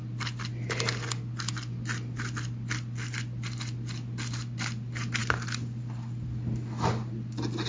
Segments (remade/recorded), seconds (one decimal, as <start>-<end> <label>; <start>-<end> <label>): 0.0-7.7 recorded